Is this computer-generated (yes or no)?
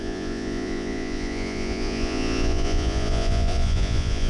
yes